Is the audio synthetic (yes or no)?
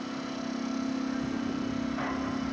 no